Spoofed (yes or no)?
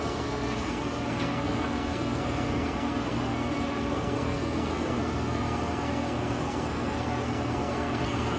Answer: yes